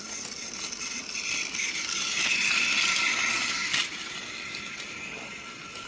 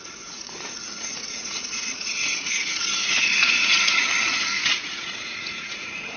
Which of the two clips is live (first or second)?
first